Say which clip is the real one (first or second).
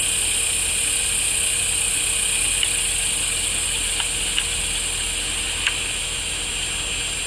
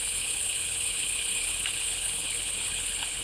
first